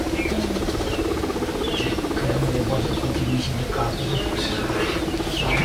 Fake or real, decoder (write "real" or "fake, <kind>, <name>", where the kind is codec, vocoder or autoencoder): real